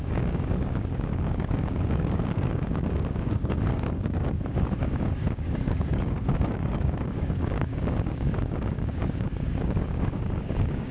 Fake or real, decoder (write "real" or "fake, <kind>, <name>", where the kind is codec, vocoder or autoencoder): fake, codec, DAC